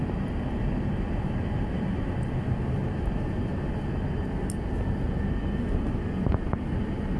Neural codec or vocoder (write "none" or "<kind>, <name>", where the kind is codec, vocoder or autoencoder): none